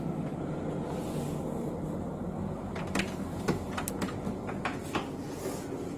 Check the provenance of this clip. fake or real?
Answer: real